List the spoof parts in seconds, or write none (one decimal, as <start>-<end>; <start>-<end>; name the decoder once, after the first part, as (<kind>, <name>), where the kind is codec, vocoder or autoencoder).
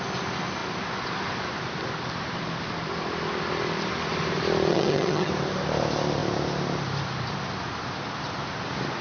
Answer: 4.7-5.3 (vocoder, HiFi-GAN)